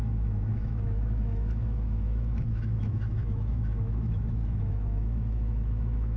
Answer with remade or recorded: remade